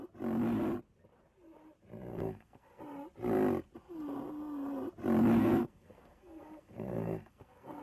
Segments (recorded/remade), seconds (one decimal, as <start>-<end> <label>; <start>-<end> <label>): 0.0-2.1 recorded; 2.1-2.8 remade; 2.8-5.4 recorded; 5.4-7.8 remade